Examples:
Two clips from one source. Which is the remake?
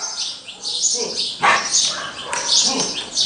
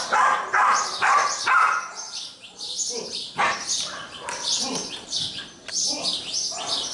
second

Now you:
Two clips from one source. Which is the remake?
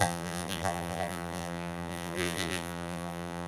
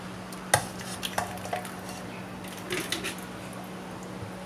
first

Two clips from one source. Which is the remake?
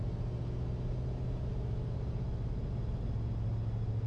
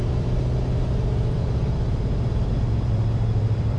second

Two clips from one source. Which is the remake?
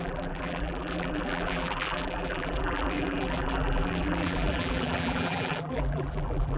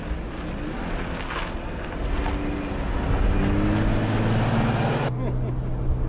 first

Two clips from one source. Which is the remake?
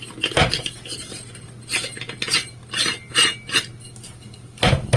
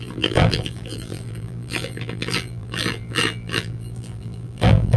second